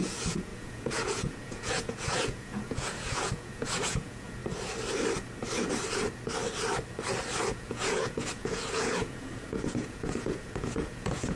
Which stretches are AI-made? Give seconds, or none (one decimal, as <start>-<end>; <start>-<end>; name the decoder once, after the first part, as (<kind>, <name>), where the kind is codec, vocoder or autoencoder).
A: 0.0-4.4 (vocoder, Vocos); 7.5-11.4